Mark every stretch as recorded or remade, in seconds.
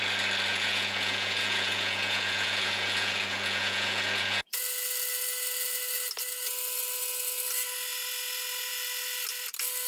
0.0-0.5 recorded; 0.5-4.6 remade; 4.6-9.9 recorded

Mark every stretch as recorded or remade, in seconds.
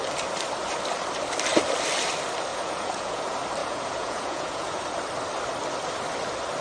0.0-2.5 recorded; 2.5-3.2 remade; 3.2-3.6 recorded; 3.6-4.8 remade; 4.8-6.6 recorded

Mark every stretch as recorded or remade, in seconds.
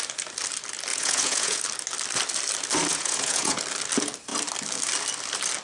0.0-0.9 recorded; 0.9-1.6 remade; 1.6-2.9 recorded; 2.9-3.6 remade; 3.6-5.6 recorded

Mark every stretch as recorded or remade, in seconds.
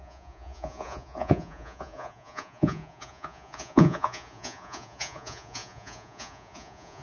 0.0-7.0 remade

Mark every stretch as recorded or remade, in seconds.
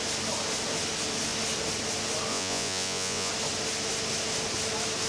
0.0-2.3 recorded; 2.3-3.3 remade; 3.3-5.1 recorded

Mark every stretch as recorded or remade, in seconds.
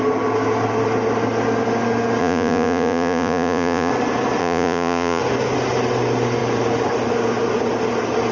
0.0-2.2 recorded; 2.2-3.9 remade; 3.9-4.4 recorded; 4.4-5.2 remade; 5.2-8.3 recorded